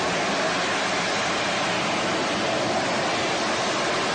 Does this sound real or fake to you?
real